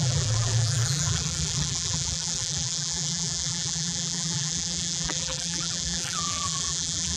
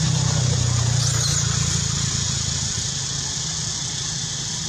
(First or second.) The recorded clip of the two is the second